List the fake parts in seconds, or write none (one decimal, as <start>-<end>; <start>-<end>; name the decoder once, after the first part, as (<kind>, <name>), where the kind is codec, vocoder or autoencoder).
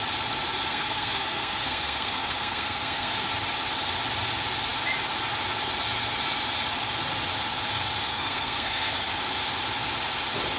0.7-3.2 (codec, SNAC); 8.1-9.1